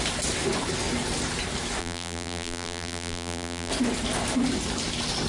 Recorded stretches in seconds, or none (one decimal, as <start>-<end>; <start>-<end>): 0.0-1.8; 3.7-5.3